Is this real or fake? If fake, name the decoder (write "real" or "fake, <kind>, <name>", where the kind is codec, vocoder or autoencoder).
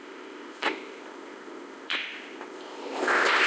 fake, codec, ZipCodec